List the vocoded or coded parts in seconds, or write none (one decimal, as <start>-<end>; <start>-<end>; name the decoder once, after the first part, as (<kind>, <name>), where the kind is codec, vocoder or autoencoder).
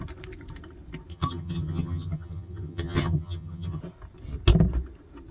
1.1-3.8 (vocoder, HiFi-GAN)